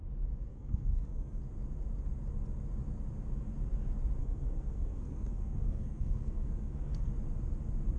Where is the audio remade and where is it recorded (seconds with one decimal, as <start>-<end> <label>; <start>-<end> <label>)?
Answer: 0.0-0.5 recorded; 0.5-1.4 remade; 1.4-4.2 recorded; 4.2-7.1 remade; 7.1-8.0 recorded